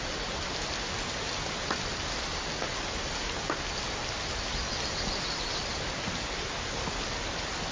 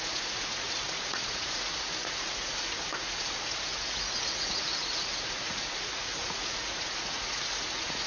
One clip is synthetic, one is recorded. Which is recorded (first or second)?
first